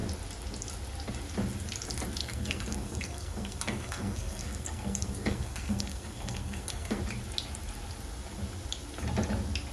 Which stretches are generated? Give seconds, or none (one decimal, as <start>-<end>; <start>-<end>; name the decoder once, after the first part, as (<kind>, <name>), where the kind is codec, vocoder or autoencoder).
2.2-7.0 (codec, SNAC)